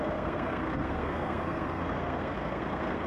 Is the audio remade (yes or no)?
yes